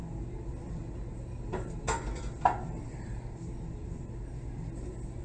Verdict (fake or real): real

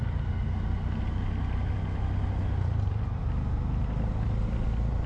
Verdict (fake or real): real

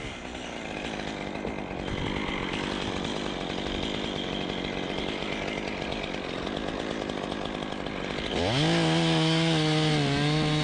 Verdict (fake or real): real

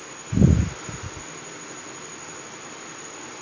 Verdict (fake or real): real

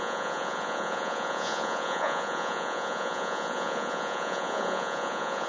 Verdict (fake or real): fake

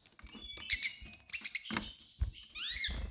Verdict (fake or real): real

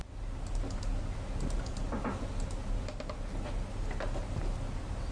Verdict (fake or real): real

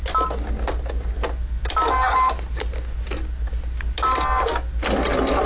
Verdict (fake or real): real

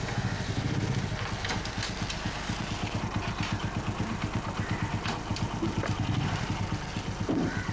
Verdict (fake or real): real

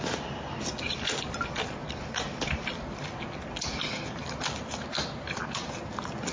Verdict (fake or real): real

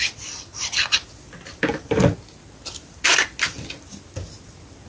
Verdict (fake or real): real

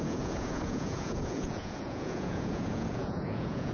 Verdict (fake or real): fake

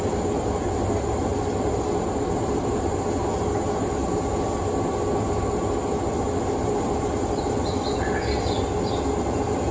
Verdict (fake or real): real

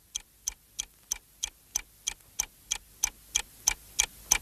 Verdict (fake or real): real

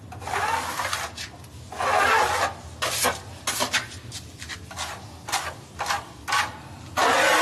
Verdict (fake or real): real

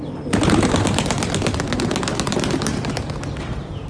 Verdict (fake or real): real